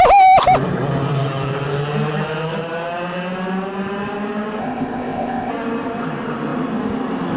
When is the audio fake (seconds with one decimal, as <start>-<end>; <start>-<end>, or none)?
4.6-5.5